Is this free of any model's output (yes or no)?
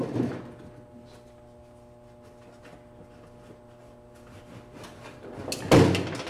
yes